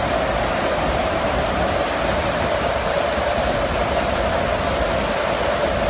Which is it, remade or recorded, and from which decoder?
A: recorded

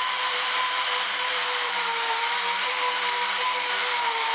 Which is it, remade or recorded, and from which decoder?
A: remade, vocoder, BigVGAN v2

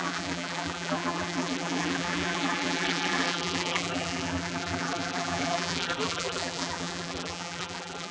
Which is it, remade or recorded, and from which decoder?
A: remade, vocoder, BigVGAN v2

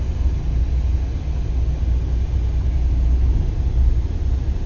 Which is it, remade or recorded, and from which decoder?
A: recorded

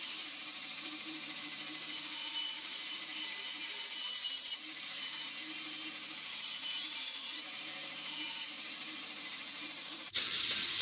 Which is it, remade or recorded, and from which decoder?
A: remade, vocoder, BigVGAN v2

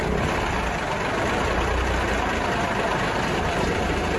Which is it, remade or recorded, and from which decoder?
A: remade, vocoder, BigVGAN v2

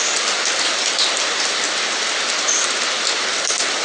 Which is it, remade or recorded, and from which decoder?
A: recorded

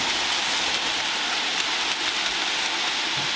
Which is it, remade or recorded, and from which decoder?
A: recorded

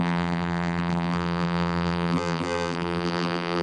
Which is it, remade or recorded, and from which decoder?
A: remade, vocoder, BigVGAN v2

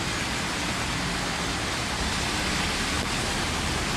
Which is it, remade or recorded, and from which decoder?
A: recorded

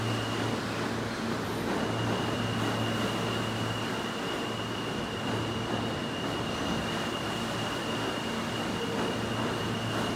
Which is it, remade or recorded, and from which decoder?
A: recorded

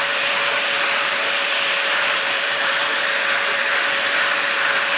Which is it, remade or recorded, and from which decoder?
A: remade, vocoder, BigVGAN v2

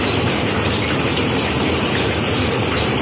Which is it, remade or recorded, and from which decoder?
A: remade, vocoder, BigVGAN v2